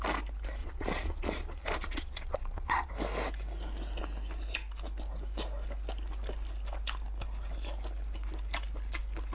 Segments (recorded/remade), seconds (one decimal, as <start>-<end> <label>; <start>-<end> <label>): 0.0-0.6 recorded; 0.6-2.9 remade; 2.9-9.3 recorded